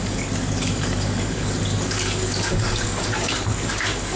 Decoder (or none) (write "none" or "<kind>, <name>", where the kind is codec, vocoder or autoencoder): codec, DAC